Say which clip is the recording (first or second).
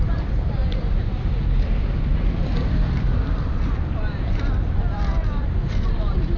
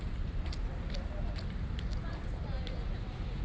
second